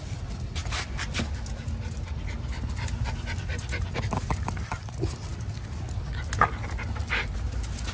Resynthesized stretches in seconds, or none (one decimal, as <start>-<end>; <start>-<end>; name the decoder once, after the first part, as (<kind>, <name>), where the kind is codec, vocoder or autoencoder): none